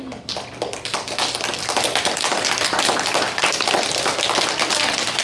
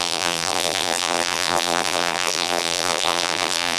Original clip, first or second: first